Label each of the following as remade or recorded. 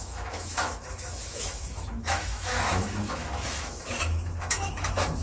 remade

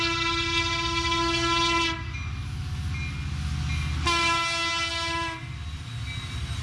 recorded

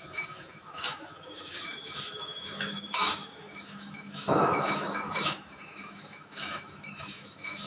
remade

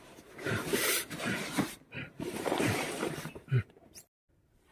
remade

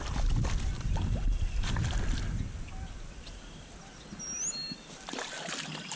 recorded